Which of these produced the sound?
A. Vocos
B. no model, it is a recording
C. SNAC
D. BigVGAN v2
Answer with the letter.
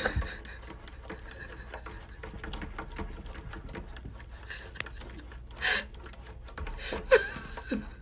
B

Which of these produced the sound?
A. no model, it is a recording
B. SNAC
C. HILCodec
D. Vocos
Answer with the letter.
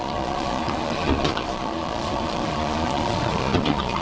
D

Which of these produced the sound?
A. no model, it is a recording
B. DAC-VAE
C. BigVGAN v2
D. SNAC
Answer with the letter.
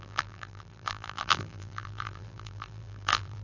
C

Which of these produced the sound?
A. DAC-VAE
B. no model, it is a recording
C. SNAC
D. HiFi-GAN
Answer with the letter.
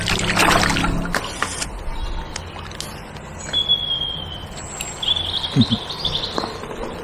B